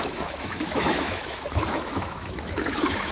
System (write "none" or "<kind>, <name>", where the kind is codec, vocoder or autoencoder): autoencoder, DAC-VAE